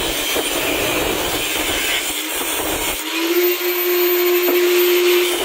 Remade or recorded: recorded